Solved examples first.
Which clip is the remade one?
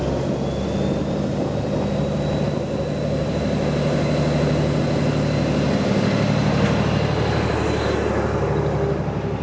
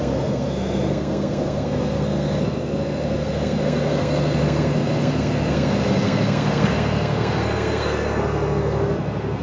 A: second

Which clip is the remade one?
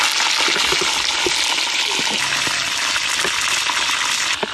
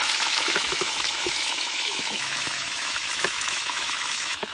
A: second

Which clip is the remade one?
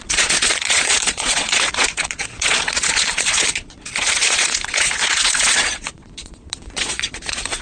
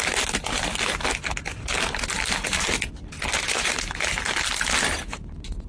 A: first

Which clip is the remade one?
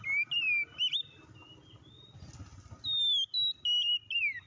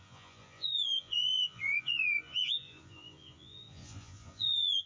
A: second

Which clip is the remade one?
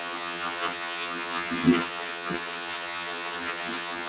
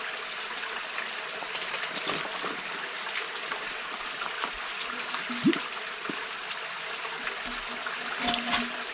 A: first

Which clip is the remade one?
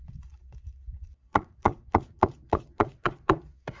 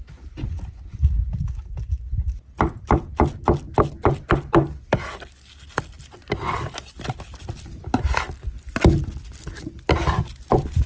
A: first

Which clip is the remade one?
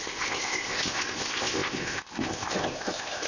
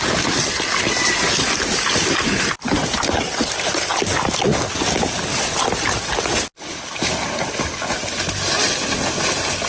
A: first